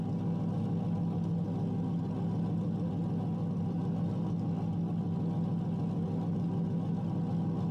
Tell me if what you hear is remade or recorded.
recorded